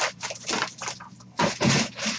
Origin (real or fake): real